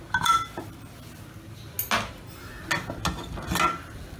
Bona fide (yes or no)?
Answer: yes